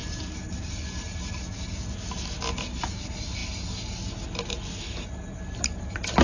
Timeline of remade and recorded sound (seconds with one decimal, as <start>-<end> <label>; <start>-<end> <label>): 0.0-6.2 recorded